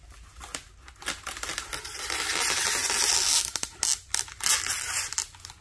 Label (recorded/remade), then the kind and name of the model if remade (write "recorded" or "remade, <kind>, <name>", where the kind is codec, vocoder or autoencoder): recorded